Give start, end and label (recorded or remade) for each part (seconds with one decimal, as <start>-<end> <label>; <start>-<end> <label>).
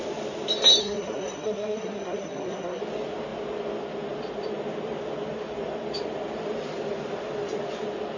0.0-0.8 recorded; 0.8-2.8 remade; 2.8-8.2 recorded